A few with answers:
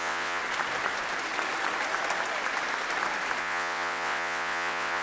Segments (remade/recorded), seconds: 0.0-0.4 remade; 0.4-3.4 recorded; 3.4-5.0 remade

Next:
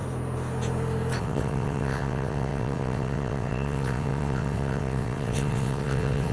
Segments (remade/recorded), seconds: 0.0-1.2 recorded; 1.2-6.3 remade